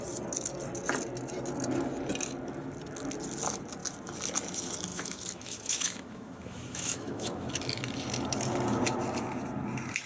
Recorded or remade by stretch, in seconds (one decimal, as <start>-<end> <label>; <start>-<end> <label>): 0.0-4.9 recorded; 4.9-7.5 remade; 7.5-10.1 recorded